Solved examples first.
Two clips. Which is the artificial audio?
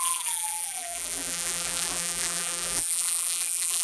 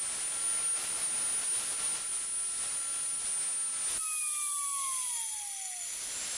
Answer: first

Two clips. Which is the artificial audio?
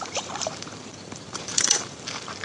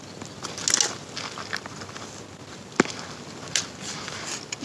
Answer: first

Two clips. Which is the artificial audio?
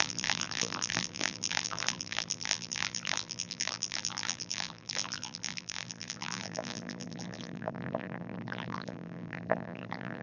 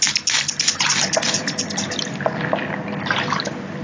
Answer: first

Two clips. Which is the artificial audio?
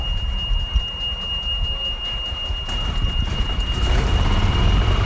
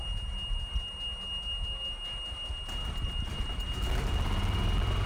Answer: first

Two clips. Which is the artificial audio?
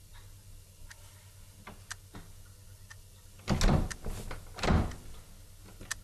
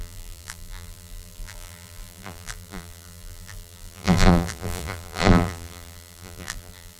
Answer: second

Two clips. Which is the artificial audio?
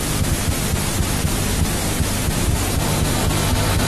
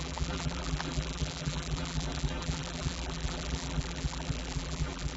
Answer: second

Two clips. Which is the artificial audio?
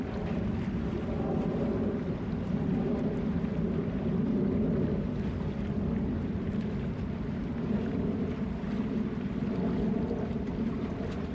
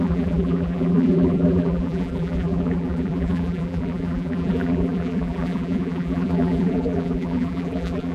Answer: second